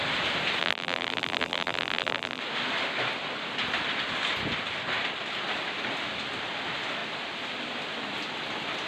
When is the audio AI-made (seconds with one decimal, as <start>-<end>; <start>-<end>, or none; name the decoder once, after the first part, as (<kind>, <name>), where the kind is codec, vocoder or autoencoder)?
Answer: 0.6-2.4 (vocoder, BigVGAN v2)